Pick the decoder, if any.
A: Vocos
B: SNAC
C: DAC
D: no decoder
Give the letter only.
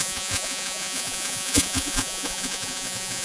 A